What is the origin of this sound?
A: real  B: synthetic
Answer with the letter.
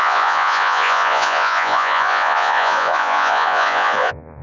B